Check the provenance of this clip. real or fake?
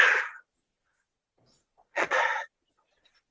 fake